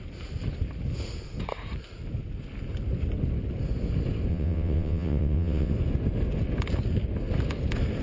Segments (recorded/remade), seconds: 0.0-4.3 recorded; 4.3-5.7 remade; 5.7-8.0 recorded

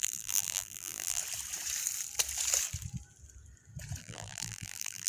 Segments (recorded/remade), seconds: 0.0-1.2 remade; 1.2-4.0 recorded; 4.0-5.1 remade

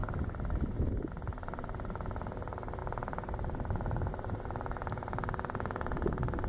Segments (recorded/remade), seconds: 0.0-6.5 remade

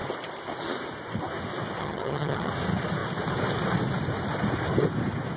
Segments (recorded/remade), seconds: 0.0-1.8 recorded; 1.8-2.5 remade; 2.5-5.4 recorded

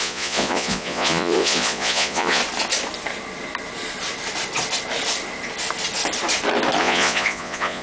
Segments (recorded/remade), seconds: 0.0-2.4 remade; 2.4-6.8 recorded; 6.8-7.8 remade